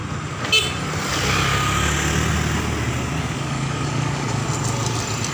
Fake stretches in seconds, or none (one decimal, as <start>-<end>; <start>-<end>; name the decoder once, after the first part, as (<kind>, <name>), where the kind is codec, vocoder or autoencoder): 3.2-4.4 (codec, DAC)